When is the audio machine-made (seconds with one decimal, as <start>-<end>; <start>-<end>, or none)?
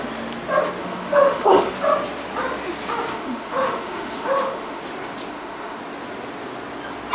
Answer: 0.8-1.7; 3.1-4.8; 5.3-5.8